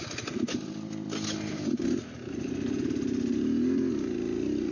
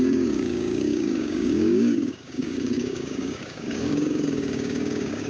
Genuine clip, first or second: first